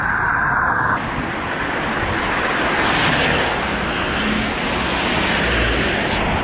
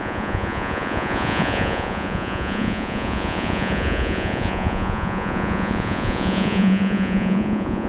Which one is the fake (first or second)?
second